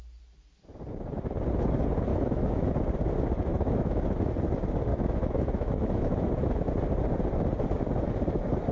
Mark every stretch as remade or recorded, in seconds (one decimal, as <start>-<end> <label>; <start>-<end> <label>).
0.0-2.1 recorded; 2.1-2.7 remade; 2.7-3.5 recorded; 3.5-4.3 remade; 4.3-4.9 recorded; 4.9-6.7 remade; 6.7-8.7 recorded